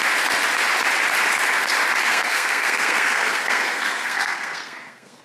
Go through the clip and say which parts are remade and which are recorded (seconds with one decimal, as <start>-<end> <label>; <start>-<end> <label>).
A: 0.0-2.0 recorded; 2.0-5.2 remade